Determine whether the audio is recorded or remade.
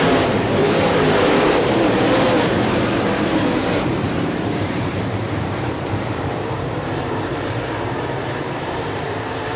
remade